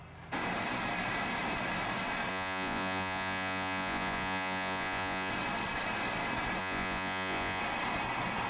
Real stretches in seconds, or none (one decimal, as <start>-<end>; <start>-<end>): 0.0-2.3; 5.3-6.6; 7.6-8.5